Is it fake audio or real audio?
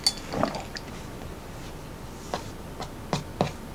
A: real